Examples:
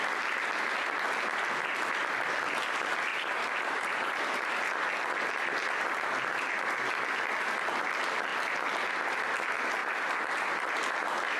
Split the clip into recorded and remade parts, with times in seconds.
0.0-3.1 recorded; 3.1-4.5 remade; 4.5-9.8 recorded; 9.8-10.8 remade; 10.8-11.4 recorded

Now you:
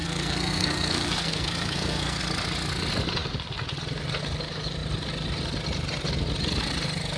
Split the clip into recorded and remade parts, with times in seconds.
0.0-2.2 remade; 2.2-7.2 recorded